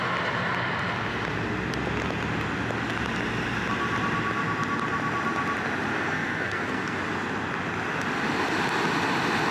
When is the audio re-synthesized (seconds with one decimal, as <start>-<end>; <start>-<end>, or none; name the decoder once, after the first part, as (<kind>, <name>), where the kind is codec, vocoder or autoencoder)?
5.9-7.0 (codec, SNAC)